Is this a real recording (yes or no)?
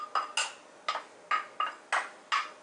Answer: yes